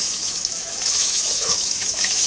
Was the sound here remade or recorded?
remade